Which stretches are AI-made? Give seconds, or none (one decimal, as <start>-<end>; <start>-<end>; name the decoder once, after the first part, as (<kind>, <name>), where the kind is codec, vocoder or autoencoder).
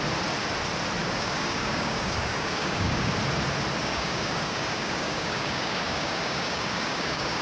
1.0-3.1 (codec, DAC); 3.8-7.4